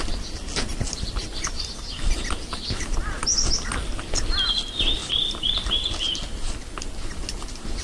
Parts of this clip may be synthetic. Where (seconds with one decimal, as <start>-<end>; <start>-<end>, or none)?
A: 5.0-5.5